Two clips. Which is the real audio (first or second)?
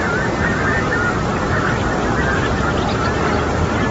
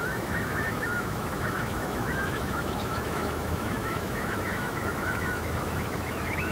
first